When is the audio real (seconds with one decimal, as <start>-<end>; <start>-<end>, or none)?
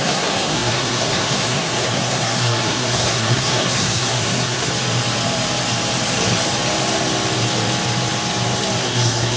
4.7-8.8